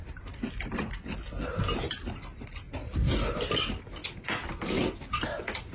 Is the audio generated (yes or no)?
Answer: no